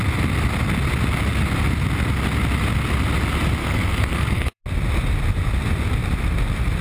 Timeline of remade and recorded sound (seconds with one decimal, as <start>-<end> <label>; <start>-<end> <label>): 0.0-3.6 recorded; 3.6-4.6 remade; 4.6-6.8 recorded